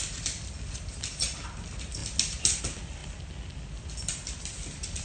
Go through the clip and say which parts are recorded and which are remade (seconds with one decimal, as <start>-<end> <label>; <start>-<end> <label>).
0.0-5.0 recorded